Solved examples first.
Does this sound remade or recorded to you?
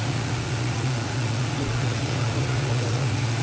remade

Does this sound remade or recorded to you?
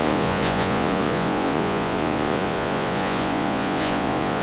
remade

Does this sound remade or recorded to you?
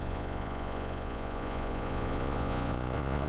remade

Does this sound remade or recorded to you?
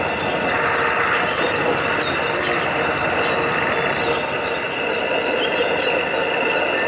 recorded